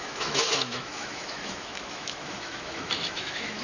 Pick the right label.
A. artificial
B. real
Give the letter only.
A